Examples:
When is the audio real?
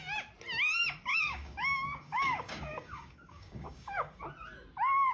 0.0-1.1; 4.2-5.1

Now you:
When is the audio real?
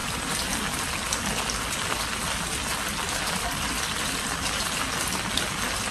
0.0-5.9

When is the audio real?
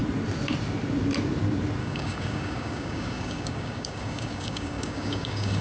0.0-1.8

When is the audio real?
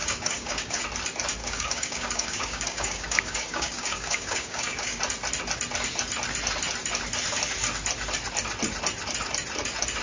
0.8-1.4; 5.0-10.0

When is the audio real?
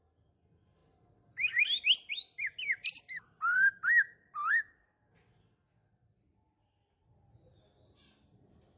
0.0-8.8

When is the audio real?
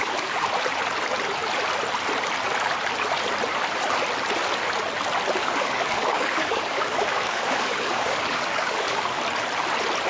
0.5-5.4; 9.2-10.1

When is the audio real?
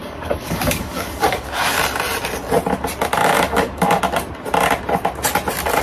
1.8-3.2; 4.0-5.8